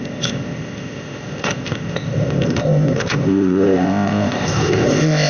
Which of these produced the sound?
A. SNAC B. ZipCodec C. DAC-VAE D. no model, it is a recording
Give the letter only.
B